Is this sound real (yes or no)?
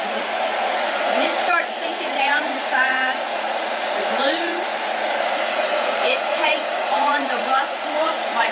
no